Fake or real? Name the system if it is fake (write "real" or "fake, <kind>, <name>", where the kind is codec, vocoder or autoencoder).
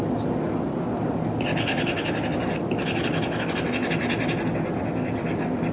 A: real